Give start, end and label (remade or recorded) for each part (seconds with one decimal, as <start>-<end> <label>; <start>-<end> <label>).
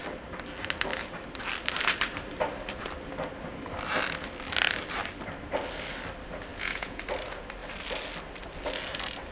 0.0-6.5 recorded; 6.5-7.0 remade; 7.0-9.3 recorded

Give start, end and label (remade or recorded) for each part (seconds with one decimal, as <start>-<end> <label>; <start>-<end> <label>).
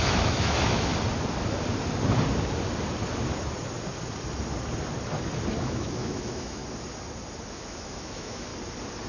0.0-0.9 remade; 0.9-5.6 recorded; 5.6-6.6 remade; 6.6-7.5 recorded; 7.5-8.5 remade; 8.5-9.1 recorded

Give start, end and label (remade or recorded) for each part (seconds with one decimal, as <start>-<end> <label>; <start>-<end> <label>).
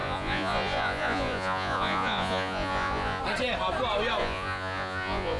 0.0-3.2 remade; 3.2-4.2 recorded; 4.2-5.4 remade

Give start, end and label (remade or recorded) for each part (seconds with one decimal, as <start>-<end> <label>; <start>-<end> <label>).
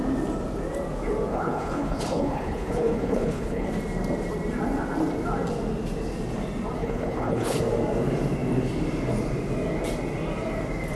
0.0-1.3 recorded; 1.3-3.7 remade; 3.7-6.8 recorded; 6.8-7.6 remade; 7.6-11.0 recorded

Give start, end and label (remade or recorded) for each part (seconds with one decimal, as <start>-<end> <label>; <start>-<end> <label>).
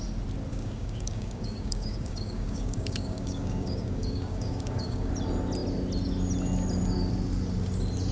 0.0-0.5 recorded; 0.5-5.1 remade; 5.1-8.1 recorded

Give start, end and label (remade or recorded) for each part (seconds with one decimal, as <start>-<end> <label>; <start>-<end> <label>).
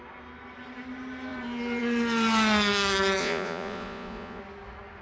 0.0-3.2 recorded; 3.2-4.4 remade; 4.4-5.0 recorded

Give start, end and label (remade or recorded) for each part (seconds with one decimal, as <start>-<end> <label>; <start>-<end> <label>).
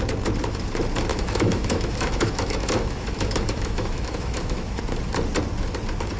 0.0-1.1 recorded; 1.1-4.8 remade; 4.8-6.2 recorded